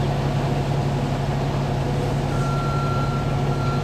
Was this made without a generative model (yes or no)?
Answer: yes